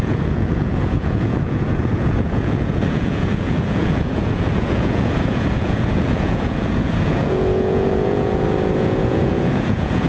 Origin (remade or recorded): remade